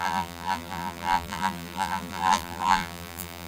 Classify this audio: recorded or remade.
remade